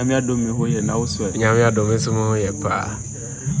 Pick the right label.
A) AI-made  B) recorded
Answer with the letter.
B